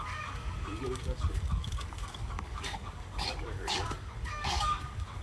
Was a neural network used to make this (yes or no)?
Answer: yes